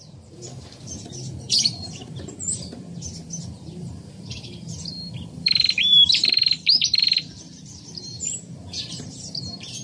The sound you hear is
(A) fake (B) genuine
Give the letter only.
A